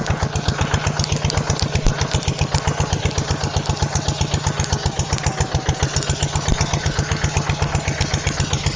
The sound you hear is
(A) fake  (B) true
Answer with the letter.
B